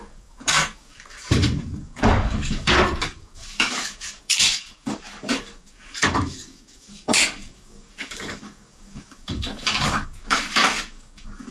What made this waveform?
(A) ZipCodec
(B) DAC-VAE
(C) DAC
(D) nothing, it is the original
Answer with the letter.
C